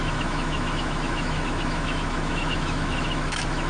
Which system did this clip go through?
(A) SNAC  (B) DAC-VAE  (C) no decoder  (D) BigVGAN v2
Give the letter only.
B